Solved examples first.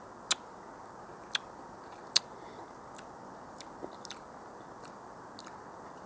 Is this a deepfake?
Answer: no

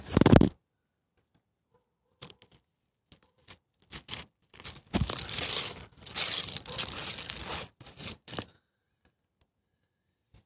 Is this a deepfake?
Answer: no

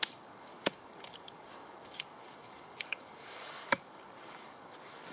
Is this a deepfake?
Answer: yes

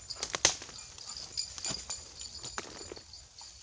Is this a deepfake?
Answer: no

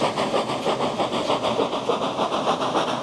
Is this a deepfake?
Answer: no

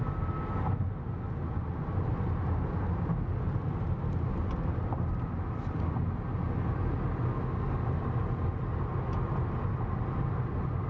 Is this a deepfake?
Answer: no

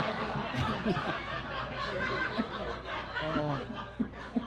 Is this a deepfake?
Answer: yes